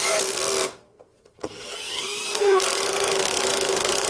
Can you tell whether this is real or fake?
fake